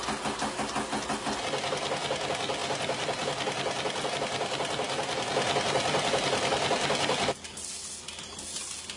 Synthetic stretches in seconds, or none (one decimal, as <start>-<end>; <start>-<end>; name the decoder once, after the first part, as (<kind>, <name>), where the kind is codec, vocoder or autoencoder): none